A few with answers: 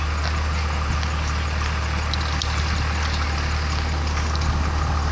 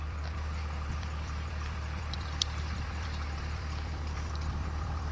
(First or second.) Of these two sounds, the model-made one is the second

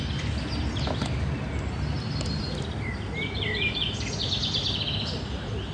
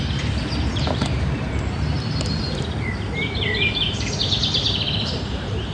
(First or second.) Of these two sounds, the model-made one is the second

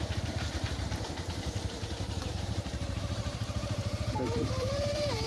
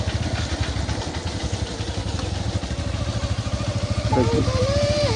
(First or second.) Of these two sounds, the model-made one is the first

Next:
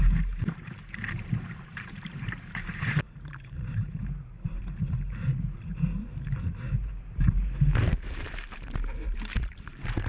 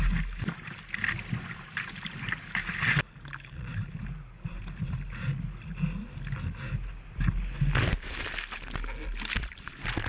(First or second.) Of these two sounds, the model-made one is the first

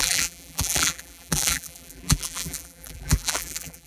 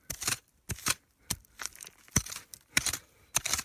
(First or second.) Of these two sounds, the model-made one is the first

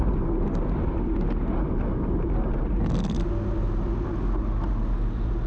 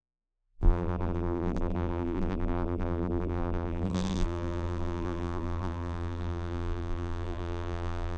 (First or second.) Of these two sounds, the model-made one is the second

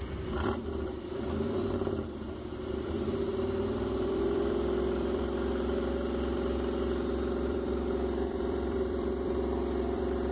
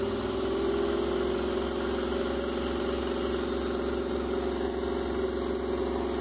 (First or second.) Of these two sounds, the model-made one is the first